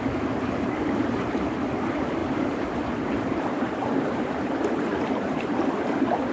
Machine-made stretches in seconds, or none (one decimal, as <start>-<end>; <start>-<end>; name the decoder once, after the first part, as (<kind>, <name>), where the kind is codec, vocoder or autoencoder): 2.2-5.7 (vocoder, BigVGAN v2)